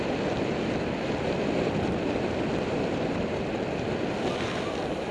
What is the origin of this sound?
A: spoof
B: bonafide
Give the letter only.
B